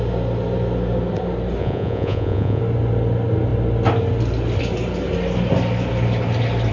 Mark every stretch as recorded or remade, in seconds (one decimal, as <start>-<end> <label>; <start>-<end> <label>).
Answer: 0.0-1.6 recorded; 1.6-2.6 remade; 2.6-6.7 recorded